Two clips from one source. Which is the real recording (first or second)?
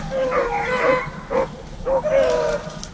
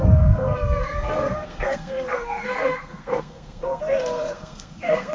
first